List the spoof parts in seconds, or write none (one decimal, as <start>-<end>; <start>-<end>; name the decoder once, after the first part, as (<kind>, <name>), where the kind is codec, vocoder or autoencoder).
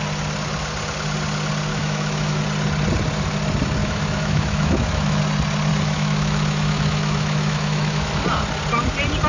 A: 1.7-2.4 (autoencoder, DAC-VAE); 3.8-5.2; 5.7-8.1